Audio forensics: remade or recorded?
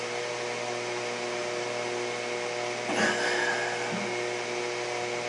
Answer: recorded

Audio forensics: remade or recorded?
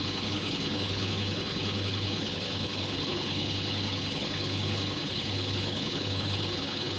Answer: remade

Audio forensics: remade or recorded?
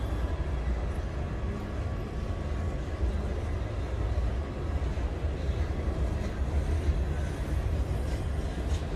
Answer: recorded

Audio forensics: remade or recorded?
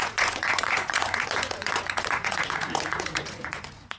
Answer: remade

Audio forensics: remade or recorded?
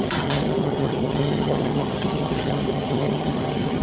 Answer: remade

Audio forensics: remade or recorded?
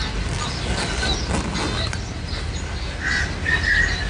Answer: recorded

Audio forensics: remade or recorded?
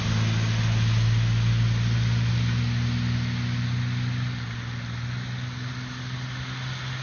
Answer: recorded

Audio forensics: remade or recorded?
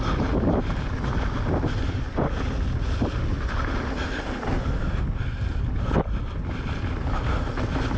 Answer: recorded